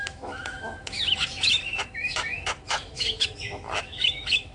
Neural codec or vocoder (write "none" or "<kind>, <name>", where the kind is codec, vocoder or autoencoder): autoencoder, DAC-VAE